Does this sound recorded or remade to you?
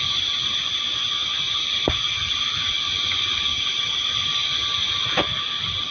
remade